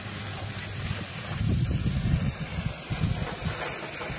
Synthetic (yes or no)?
no